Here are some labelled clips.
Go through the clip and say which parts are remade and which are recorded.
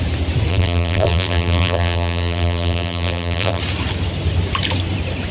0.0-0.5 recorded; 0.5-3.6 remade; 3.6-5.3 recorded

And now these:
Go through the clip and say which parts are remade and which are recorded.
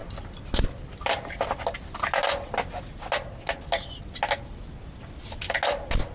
0.0-6.1 recorded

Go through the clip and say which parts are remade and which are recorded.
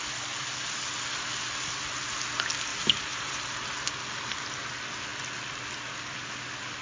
0.0-2.7 recorded; 2.7-3.3 remade; 3.3-6.8 recorded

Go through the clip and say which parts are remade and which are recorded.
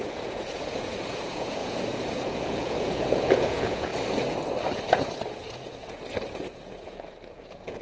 0.0-3.9 remade; 3.9-4.9 recorded; 4.9-7.8 remade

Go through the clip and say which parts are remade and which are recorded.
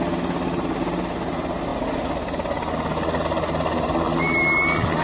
0.0-5.0 recorded